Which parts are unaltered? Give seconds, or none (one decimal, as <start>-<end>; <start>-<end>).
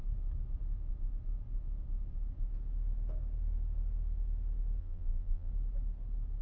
0.0-4.8; 5.5-6.4